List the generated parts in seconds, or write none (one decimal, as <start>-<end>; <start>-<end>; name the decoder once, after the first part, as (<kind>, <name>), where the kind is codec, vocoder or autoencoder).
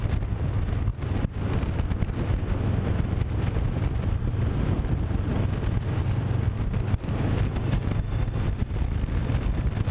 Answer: 0.0-7.5 (vocoder, BigVGAN v2); 8.5-9.9